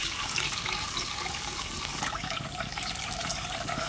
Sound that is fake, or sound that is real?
fake